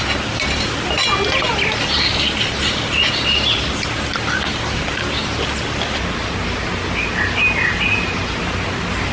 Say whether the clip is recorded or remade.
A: recorded